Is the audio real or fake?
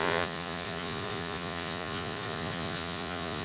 fake